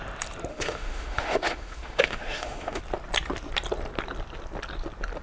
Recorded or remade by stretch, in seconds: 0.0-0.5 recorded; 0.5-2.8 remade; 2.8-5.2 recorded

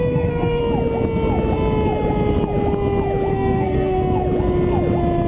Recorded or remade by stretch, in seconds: 0.0-0.6 remade; 0.6-3.3 recorded; 3.3-4.0 remade; 4.0-5.3 recorded

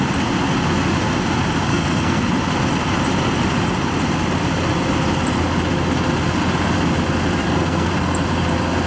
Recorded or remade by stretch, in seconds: 0.0-1.7 recorded; 1.7-2.3 remade; 2.3-7.4 recorded; 7.4-7.9 remade; 7.9-8.9 recorded

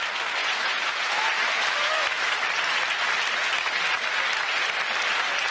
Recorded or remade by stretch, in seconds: 0.0-0.4 recorded; 0.4-1.1 remade; 1.1-5.5 recorded

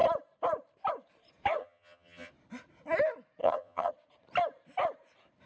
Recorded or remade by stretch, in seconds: 0.0-1.6 recorded; 1.6-2.3 remade; 2.3-3.4 recorded; 3.4-3.9 remade; 3.9-5.5 recorded

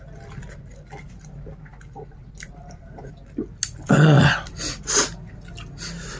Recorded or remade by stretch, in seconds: 0.0-6.2 recorded

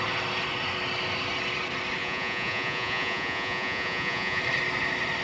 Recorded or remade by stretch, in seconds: 0.0-2.0 recorded; 2.0-4.4 remade; 4.4-5.2 recorded